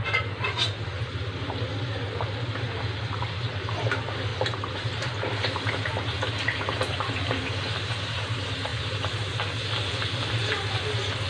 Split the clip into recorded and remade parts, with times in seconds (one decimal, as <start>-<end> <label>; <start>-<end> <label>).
0.0-4.3 remade; 4.3-4.8 recorded; 4.8-11.3 remade